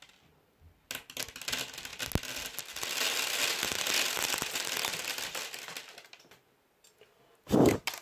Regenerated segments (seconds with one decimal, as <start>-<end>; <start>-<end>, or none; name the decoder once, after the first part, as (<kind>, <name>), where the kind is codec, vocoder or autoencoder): none